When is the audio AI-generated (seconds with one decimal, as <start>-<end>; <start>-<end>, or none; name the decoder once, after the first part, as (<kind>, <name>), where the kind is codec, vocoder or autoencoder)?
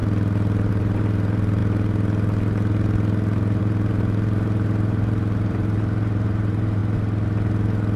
0.7-1.6 (vocoder, BigVGAN v2); 3.6-6.8